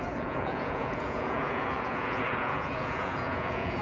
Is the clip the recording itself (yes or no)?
no